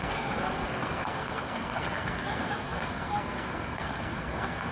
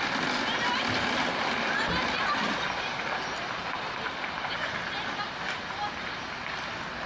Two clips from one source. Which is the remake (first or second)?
first